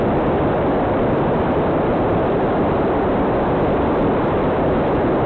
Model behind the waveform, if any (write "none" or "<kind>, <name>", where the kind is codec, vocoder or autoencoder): vocoder, BigVGAN v2